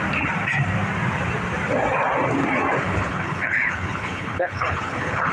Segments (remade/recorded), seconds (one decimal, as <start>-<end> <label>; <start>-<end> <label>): 0.0-2.8 recorded; 2.8-5.3 remade